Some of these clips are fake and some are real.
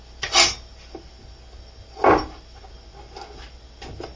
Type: real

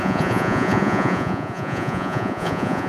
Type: fake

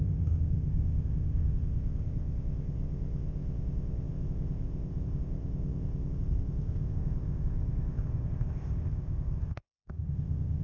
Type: fake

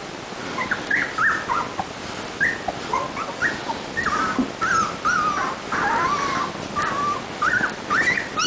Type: real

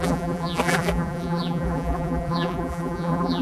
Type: fake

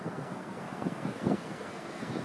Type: fake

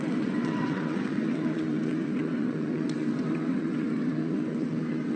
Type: fake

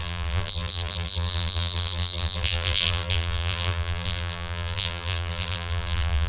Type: fake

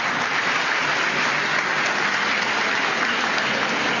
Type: real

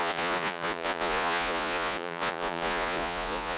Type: fake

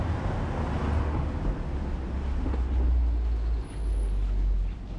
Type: real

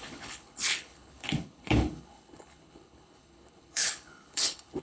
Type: fake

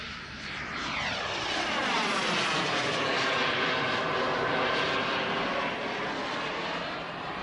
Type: real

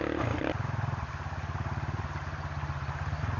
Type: real